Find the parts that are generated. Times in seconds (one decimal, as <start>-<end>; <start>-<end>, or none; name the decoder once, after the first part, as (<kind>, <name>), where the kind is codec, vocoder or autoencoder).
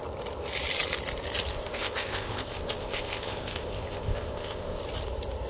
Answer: 1.5-4.8 (codec, ZipCodec)